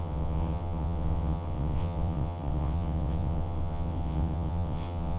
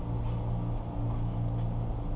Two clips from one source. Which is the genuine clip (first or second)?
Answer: second